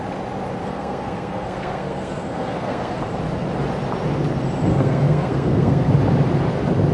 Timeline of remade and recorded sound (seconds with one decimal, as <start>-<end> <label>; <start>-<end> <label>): 0.0-0.6 recorded; 0.6-3.0 remade; 3.0-4.7 recorded; 4.7-5.9 remade; 5.9-6.9 recorded